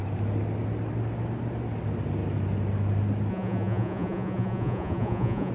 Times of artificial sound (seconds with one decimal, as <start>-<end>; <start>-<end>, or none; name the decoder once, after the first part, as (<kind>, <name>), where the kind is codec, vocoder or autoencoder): 3.3-5.5 (vocoder, Vocos)